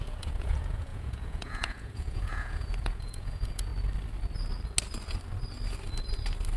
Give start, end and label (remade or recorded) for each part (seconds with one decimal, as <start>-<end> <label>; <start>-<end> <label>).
0.0-3.7 remade; 3.7-6.6 recorded